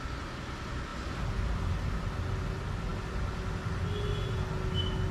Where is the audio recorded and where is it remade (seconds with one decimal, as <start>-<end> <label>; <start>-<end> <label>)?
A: 0.0-5.1 recorded